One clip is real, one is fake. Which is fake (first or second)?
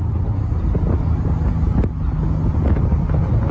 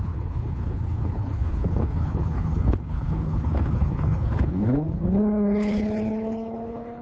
second